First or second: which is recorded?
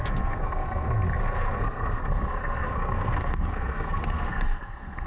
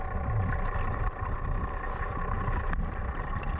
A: second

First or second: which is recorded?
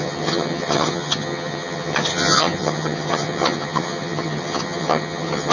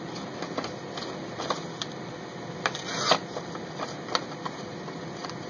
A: second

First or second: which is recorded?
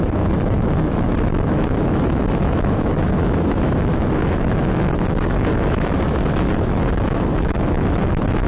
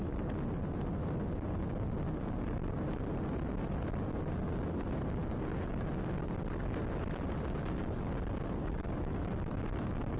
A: second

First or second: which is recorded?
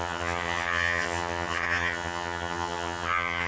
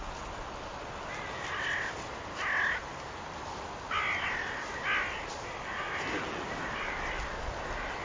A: second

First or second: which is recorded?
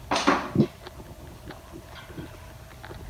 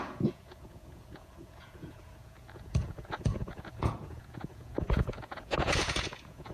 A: first